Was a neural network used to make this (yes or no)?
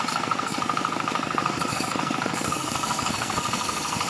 yes